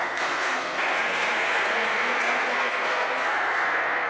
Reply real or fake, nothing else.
fake